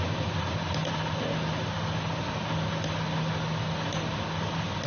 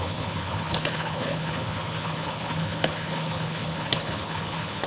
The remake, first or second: second